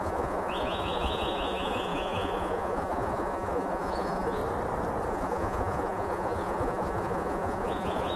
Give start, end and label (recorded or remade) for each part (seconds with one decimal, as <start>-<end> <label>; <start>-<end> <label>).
0.0-4.4 remade; 4.4-5.1 recorded; 5.1-8.2 remade